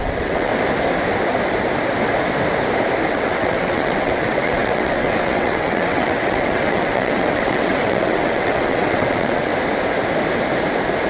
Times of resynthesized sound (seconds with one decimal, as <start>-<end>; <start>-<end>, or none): 0.0-0.5; 3.1-9.5